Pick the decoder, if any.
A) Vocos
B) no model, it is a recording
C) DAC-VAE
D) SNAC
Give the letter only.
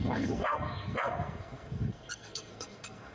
D